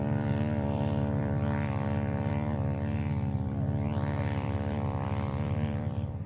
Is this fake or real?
fake